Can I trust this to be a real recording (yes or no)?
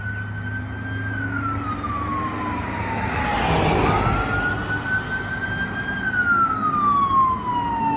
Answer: yes